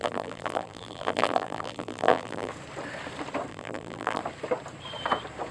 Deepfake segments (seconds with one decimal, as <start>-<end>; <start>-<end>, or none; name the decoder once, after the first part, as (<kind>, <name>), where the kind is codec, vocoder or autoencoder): 0.0-2.5 (vocoder, BigVGAN v2); 3.5-4.2